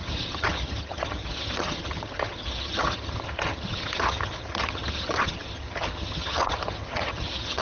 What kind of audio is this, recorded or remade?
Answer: remade